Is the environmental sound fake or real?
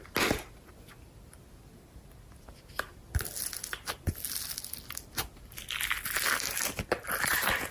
real